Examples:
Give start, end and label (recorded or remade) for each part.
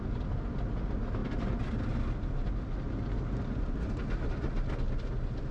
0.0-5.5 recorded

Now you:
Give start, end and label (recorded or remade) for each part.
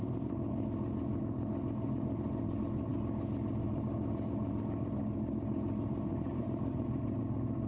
0.0-6.1 recorded; 6.1-7.2 remade; 7.2-7.7 recorded